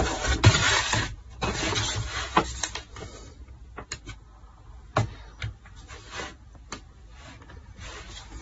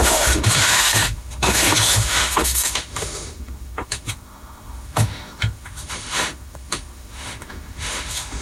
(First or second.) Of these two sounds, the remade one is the second